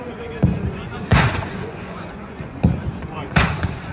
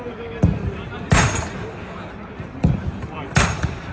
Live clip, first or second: second